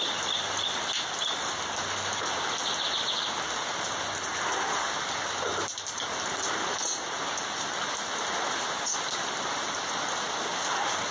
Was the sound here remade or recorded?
recorded